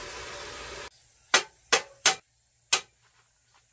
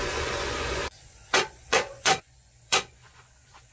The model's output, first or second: second